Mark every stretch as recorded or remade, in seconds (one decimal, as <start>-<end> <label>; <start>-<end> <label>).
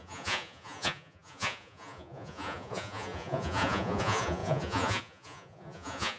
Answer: 0.0-6.2 remade